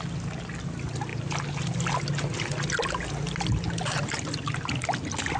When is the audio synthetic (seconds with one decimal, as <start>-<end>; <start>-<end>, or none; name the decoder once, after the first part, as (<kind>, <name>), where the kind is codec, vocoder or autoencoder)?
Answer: none